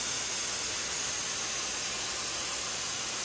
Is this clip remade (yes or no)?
no